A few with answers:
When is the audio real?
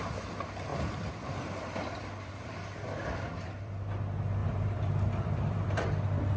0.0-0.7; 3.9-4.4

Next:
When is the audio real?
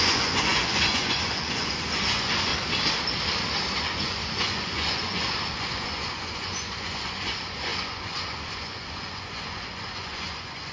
2.5-3.8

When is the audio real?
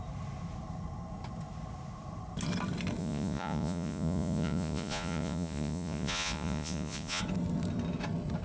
0.0-3.0; 7.2-8.4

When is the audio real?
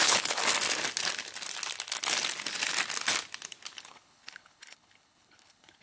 0.4-3.9